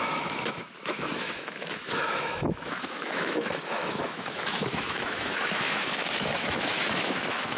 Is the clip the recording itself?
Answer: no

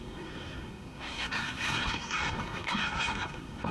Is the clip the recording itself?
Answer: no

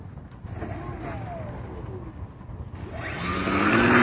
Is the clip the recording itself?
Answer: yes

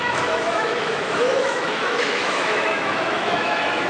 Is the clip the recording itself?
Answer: no